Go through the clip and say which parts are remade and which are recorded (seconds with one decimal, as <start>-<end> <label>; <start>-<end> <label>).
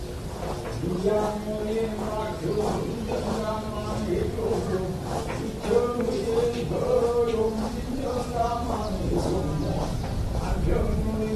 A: 0.0-2.9 recorded; 2.9-4.1 remade; 4.1-7.7 recorded; 7.7-9.2 remade; 9.2-11.4 recorded